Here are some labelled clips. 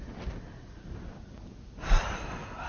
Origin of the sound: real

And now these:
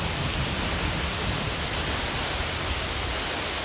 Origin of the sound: real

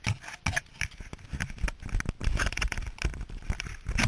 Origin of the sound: real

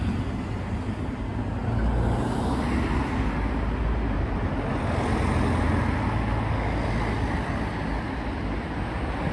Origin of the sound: real